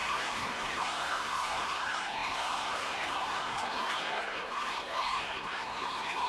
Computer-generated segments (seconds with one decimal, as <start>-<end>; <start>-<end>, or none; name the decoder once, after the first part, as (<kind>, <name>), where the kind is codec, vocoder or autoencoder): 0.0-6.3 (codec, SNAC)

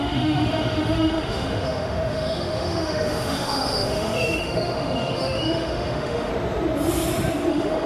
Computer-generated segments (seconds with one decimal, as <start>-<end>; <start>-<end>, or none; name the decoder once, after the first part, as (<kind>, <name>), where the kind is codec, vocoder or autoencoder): 0.0-6.3 (autoencoder, DAC-VAE); 7.5-7.9

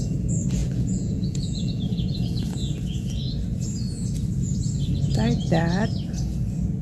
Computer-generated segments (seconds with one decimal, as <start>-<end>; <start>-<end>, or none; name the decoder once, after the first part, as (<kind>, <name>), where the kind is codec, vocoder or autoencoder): 0.6-2.4 (vocoder, Vocos)

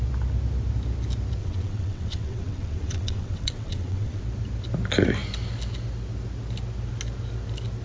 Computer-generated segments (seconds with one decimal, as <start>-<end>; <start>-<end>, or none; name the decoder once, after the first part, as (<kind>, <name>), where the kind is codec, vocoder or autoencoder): 1.4-4.2 (vocoder, WaveNeXt)